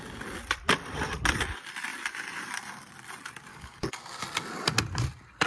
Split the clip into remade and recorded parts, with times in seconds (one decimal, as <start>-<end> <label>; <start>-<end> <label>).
0.0-3.5 recorded; 3.5-4.0 remade; 4.0-5.5 recorded